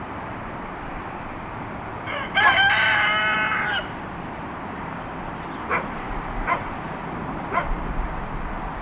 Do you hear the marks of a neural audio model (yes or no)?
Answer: yes